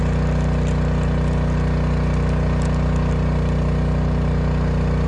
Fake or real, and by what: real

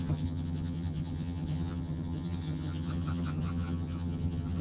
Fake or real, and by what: fake, vocoder, HiFi-GAN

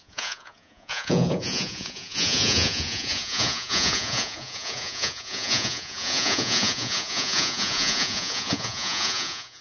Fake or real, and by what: fake, vocoder, Vocos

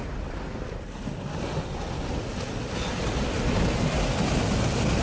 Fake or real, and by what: real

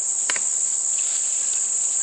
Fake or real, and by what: real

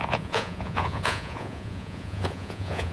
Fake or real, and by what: fake, vocoder, Vocos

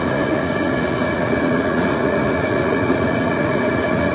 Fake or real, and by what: fake, vocoder, Vocos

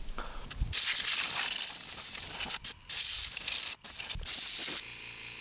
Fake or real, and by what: real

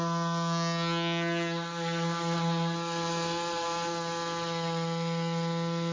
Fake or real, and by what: real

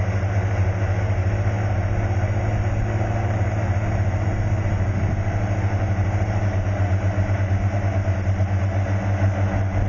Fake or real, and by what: real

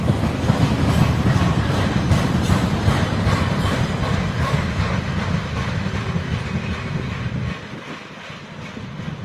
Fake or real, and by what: fake, vocoder, BigVGAN v2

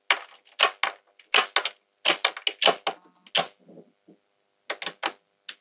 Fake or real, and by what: real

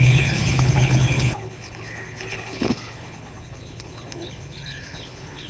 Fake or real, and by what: fake, codec, HILCodec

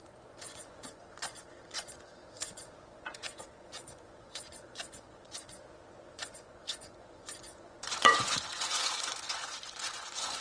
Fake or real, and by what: fake, vocoder, Vocos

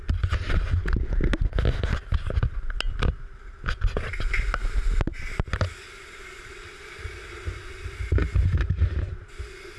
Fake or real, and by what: real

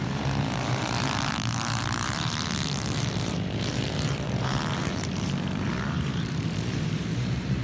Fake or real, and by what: fake, vocoder, BigVGAN v2